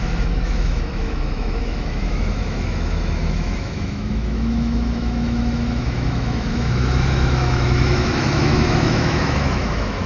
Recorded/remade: remade